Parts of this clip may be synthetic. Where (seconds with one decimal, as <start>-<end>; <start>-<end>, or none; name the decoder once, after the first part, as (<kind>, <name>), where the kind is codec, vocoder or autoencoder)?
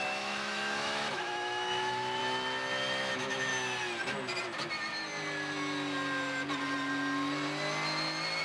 0.0-2.2 (autoencoder, DAC-VAE); 3.1-3.5